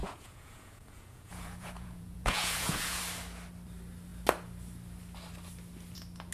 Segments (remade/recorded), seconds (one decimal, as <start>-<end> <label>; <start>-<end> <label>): 0.0-3.0 remade; 3.0-6.3 recorded